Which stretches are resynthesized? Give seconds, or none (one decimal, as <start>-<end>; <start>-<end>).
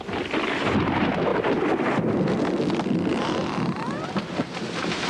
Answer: 1.3-2.3; 3.1-3.8